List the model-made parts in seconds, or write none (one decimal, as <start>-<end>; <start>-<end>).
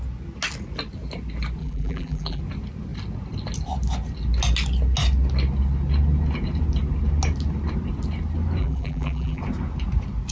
1.6-2.4; 8.6-9.4